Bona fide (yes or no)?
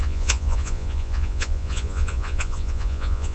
no